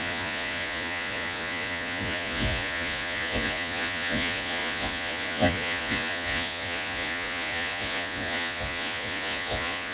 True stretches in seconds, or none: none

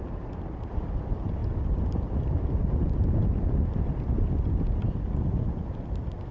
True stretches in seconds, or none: 0.0-6.3

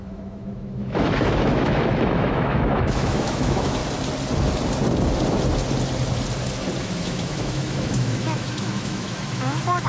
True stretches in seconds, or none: 3.8-6.8

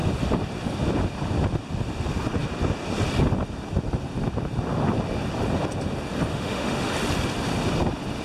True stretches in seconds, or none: 0.0-6.3; 6.9-8.2

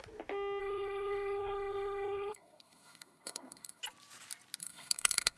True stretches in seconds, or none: 0.0-0.6; 3.8-4.6

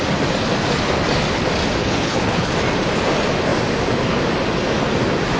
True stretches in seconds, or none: 0.0-1.8; 2.5-5.4

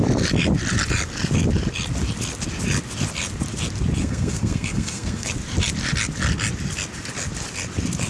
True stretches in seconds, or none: 0.0-4.0; 5.3-8.1